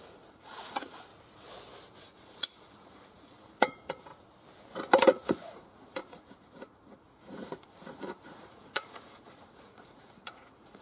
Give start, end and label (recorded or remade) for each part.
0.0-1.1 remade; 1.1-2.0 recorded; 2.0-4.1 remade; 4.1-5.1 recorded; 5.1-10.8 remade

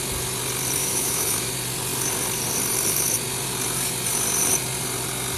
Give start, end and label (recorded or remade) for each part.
0.0-0.8 recorded; 0.8-1.5 remade; 1.5-5.4 recorded

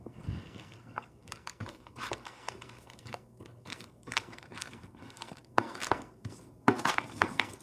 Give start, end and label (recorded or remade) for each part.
0.0-7.6 remade

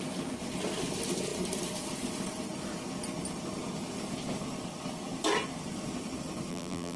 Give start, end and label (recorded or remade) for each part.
0.0-6.5 recorded; 6.5-7.0 remade

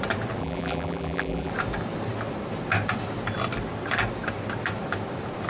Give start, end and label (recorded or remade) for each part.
0.0-0.4 recorded; 0.4-1.5 remade; 1.5-5.5 recorded

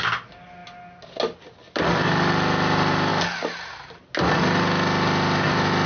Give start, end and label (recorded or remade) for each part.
0.0-5.9 recorded

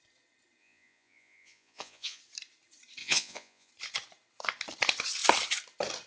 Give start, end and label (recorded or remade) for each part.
0.0-0.6 recorded; 0.6-2.2 remade; 2.2-3.0 recorded; 3.0-3.7 remade; 3.7-6.1 recorded